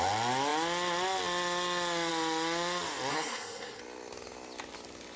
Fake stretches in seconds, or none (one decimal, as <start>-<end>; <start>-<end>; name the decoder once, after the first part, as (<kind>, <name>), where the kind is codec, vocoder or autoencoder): 3.1-3.8 (codec, SNAC)